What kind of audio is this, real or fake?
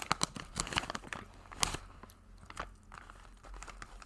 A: real